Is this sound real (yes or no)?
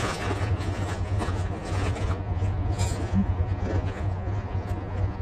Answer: no